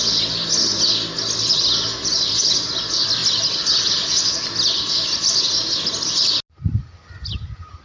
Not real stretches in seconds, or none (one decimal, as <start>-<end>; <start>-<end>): none